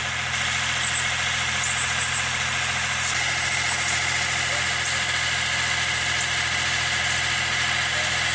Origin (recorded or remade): recorded